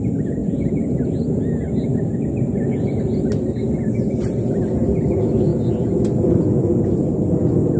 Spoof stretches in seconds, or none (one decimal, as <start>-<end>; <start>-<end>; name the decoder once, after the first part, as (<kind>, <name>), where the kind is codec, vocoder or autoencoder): none